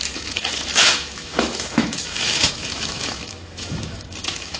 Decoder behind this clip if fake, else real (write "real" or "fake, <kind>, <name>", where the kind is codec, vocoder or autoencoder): fake, autoencoder, DAC-VAE